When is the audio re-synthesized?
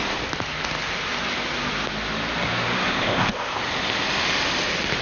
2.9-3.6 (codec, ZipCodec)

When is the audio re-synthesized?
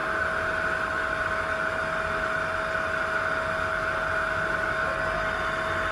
none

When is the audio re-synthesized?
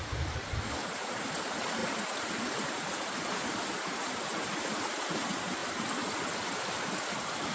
none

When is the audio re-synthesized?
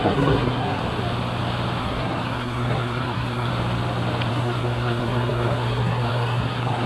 0.0-0.8 (codec, SNAC); 1.8-3.5; 4.3-6.9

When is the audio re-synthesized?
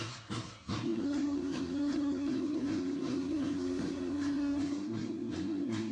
0.0-5.9 (codec, SNAC)